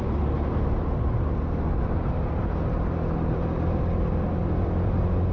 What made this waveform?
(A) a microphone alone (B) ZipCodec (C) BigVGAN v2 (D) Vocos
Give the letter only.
A